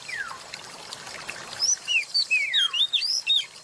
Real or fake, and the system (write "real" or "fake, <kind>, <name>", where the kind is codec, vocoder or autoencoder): fake, vocoder, BigVGAN v2